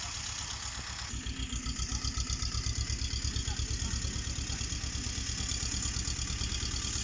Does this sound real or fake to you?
real